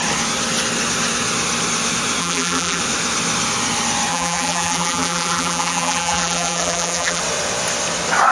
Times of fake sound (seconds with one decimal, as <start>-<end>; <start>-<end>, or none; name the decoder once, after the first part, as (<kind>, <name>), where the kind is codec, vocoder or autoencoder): 2.2-2.8 (vocoder, BigVGAN v2); 4.1-7.2